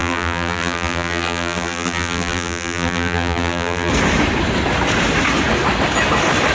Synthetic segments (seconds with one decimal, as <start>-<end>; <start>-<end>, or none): 0.0-3.9